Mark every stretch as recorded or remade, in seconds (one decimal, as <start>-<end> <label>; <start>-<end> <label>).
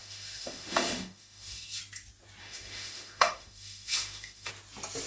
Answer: 0.0-1.8 remade; 1.8-2.4 recorded; 2.4-4.5 remade; 4.5-5.1 recorded